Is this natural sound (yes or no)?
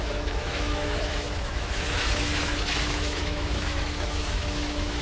no